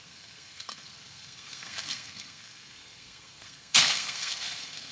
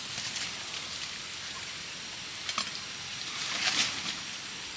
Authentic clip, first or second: second